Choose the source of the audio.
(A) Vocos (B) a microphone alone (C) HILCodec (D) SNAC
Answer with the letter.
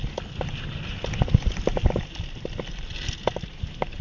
B